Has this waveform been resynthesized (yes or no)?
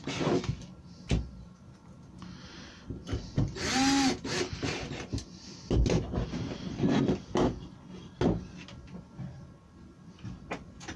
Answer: no